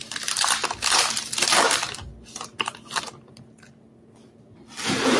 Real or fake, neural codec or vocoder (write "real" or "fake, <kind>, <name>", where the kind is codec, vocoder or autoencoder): real